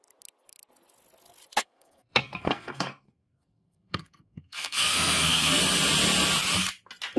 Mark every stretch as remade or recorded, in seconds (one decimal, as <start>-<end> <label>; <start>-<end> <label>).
0.0-1.6 recorded; 1.6-5.6 remade; 5.6-7.2 recorded